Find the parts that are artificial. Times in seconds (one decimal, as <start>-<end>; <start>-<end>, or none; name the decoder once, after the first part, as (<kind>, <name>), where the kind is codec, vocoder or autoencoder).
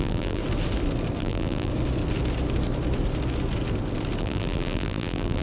0.0-0.4 (vocoder, BigVGAN v2); 1.2-1.7; 4.2-5.4